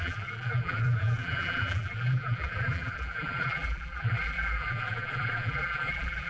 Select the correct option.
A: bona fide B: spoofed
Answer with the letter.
B